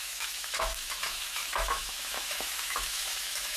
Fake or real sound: fake